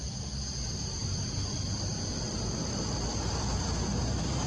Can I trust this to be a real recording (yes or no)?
yes